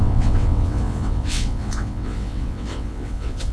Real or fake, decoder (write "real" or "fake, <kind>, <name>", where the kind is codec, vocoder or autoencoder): fake, vocoder, WaveNeXt